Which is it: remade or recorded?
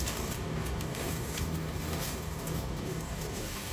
remade